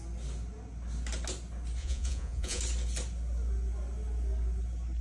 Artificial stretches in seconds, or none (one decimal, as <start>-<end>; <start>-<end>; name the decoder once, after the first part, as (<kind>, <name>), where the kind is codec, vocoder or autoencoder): 1.8-2.6 (vocoder, Vocos)